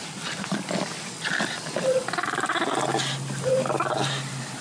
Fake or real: real